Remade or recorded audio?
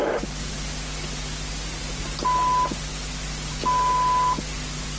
recorded